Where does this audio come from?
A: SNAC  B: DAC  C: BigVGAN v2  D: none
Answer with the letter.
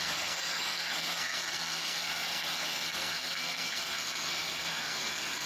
A